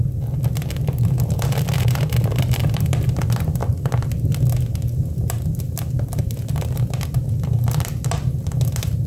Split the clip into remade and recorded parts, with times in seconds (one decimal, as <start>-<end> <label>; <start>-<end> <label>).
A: 0.0-3.6 remade; 3.6-5.2 recorded; 5.2-9.1 remade